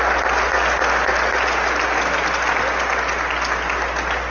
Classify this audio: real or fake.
real